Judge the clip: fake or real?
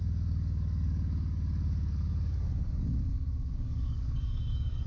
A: fake